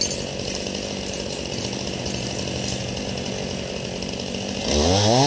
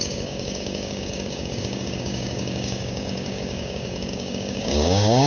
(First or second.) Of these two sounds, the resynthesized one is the second